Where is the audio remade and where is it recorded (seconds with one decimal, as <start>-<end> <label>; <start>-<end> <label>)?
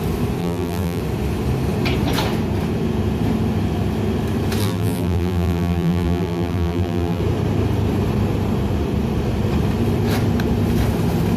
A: 0.0-0.4 recorded; 0.4-1.0 remade; 1.0-4.6 recorded; 4.6-7.2 remade; 7.2-11.4 recorded